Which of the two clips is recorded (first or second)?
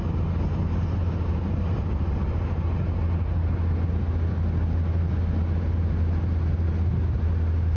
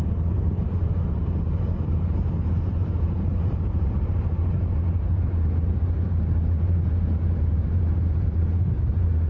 first